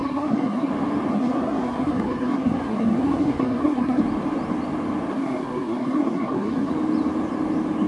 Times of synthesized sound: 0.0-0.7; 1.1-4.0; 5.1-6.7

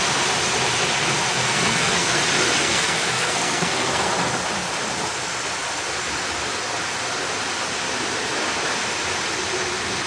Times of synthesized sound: 1.3-2.2; 2.6-4.1

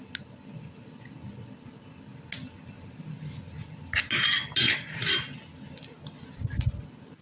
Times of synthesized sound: none

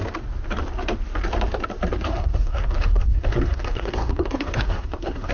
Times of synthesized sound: 2.1-5.3

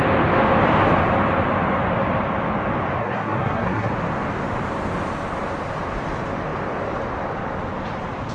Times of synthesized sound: 3.0-3.9

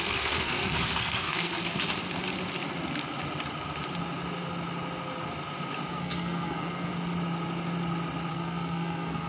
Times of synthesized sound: 0.0-1.5; 5.9-6.9; 8.3-9.3